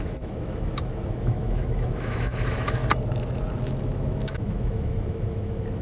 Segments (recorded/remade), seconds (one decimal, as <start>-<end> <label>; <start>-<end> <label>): 0.0-2.8 remade; 2.8-3.6 recorded; 3.6-5.8 remade